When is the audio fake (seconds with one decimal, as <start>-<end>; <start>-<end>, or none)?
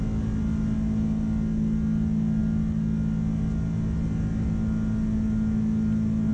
none